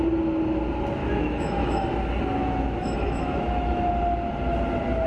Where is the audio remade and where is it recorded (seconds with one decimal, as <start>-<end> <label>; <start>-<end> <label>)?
0.0-1.0 recorded; 1.0-1.9 remade; 1.9-2.4 recorded; 2.4-3.9 remade; 3.9-5.1 recorded